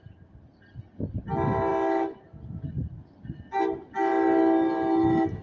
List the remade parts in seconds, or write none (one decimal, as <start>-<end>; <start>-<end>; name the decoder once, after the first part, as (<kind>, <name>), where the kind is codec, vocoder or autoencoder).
none